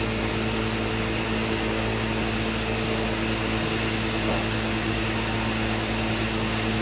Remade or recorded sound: recorded